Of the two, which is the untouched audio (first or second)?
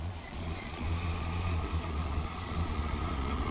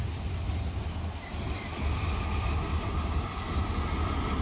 second